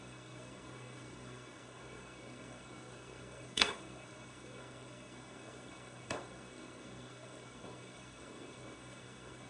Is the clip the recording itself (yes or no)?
no